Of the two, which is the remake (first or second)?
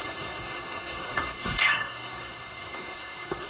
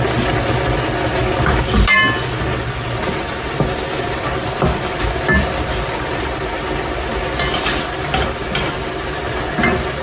first